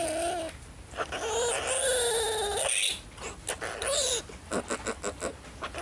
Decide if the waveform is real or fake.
real